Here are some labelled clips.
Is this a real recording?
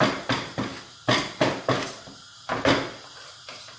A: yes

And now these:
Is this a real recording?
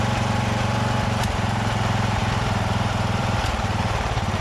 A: no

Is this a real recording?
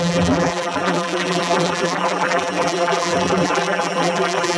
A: no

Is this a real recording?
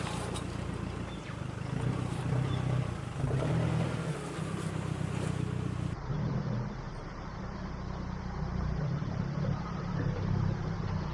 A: no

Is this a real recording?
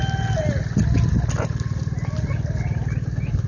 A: yes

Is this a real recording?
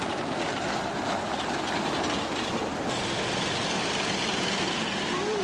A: no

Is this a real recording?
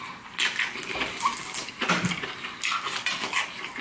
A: yes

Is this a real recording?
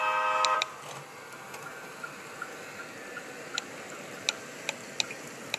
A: yes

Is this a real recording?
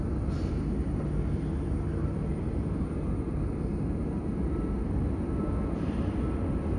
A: yes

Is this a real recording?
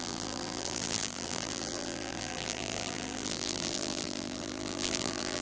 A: no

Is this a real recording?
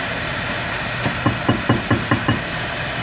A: yes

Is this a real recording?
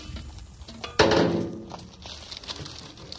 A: yes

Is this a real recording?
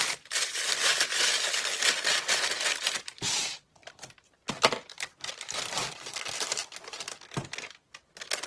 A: no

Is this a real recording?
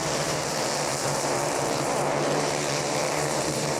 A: no